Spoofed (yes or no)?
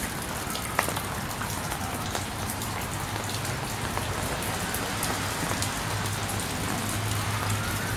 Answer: no